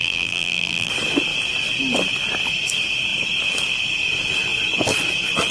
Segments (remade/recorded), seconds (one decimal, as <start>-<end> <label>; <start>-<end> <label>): 0.0-0.9 remade; 0.9-5.5 recorded